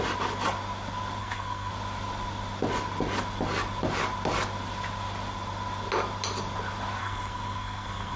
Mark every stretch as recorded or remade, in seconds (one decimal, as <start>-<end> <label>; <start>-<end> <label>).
0.0-1.2 recorded; 1.2-1.7 remade; 1.7-7.0 recorded; 7.0-8.2 remade